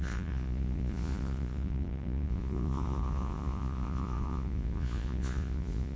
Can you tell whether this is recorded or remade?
remade